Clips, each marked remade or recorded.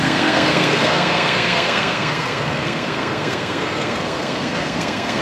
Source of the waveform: remade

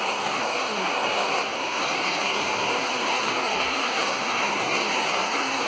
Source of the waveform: remade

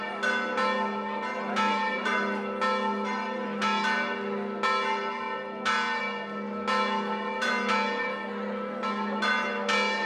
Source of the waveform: recorded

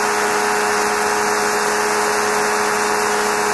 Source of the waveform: recorded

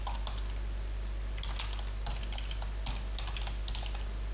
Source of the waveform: recorded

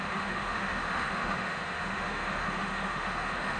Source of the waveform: remade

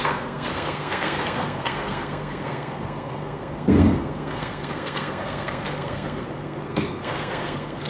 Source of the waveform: remade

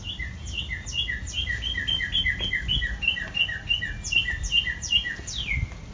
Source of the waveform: recorded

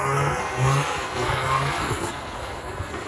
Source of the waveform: remade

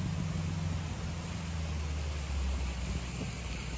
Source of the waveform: recorded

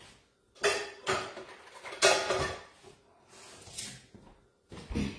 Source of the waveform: recorded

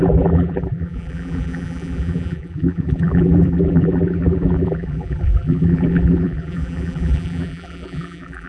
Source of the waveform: remade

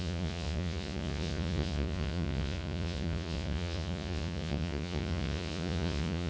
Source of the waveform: remade